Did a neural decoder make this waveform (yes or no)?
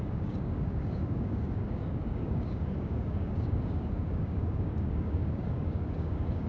yes